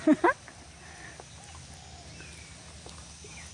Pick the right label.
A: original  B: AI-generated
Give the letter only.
A